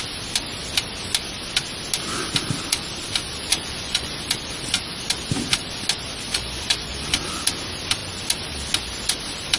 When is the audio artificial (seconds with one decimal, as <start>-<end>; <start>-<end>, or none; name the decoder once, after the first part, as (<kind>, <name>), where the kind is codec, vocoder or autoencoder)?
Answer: 3.5-4.2 (vocoder, Vocos); 6.3-7.2